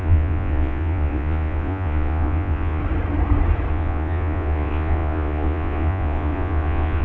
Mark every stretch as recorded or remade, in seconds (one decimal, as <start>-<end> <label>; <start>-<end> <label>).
0.0-2.8 remade; 2.8-3.7 recorded; 3.7-7.0 remade

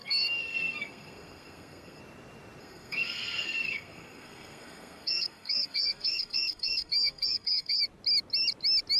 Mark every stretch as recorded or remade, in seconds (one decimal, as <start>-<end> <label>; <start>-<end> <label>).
0.0-2.0 remade; 2.0-2.6 recorded; 2.6-7.8 remade; 7.8-9.0 recorded

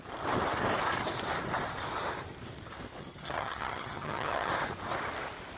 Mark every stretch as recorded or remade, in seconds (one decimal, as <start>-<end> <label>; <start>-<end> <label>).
0.0-3.0 recorded; 3.0-4.5 remade; 4.5-5.6 recorded

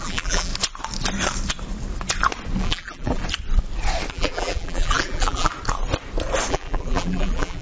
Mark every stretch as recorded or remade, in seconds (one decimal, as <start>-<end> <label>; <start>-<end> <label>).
0.0-0.5 remade; 0.5-2.6 recorded; 2.6-3.2 remade; 3.2-4.1 recorded; 4.1-5.5 remade; 5.5-6.5 recorded; 6.5-7.6 remade

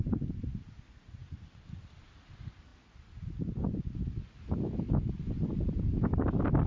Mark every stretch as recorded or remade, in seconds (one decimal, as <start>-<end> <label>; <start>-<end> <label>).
0.0-6.7 recorded

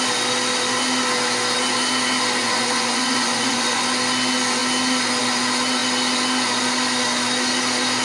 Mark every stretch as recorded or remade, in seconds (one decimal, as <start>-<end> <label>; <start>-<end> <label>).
0.0-2.4 recorded; 2.4-3.8 remade; 3.8-8.0 recorded